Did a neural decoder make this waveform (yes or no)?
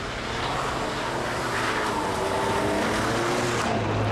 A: no